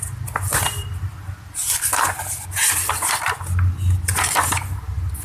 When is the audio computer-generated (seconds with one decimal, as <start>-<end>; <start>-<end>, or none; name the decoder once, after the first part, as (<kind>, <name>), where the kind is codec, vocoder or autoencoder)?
none